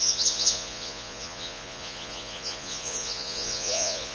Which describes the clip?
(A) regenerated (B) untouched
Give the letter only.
A